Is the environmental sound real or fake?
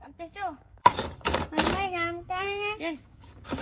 fake